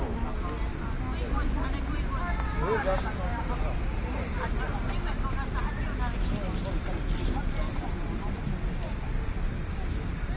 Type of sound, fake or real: real